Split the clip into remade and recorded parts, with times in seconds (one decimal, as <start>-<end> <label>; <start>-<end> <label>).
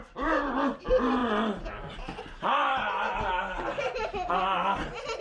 0.0-5.2 recorded